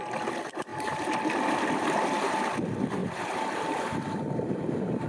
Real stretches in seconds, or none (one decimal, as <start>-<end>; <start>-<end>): 0.0-3.0